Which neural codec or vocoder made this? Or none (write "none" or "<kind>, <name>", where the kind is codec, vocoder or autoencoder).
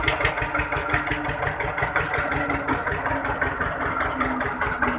none